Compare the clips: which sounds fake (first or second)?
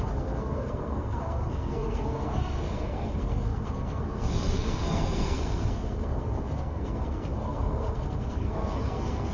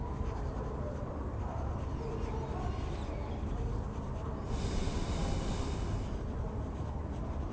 first